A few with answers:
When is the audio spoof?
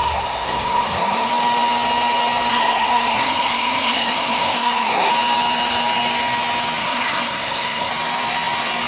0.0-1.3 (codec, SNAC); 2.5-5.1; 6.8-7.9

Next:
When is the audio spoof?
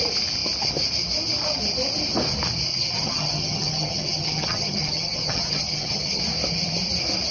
2.7-6.2 (vocoder, HiFi-GAN)